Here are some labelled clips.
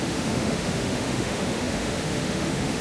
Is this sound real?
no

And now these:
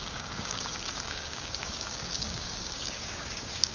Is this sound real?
no